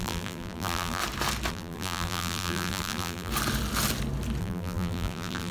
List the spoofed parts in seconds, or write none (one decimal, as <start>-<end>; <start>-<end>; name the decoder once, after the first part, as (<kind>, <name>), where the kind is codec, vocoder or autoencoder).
0.0-1.0 (vocoder, BigVGAN v2); 1.5-3.3; 4.4-5.5